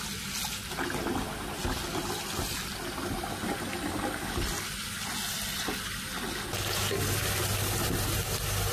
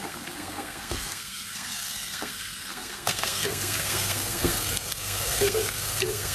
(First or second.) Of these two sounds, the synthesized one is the second